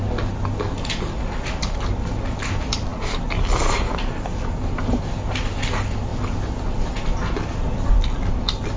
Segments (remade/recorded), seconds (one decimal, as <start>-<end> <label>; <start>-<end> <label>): 0.0-8.8 recorded